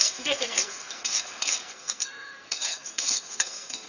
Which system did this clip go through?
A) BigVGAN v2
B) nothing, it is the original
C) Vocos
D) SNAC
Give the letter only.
D